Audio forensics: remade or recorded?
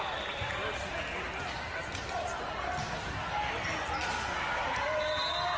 recorded